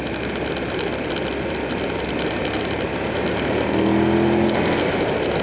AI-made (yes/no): no